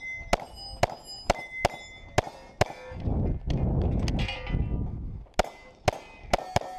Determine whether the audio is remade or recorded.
recorded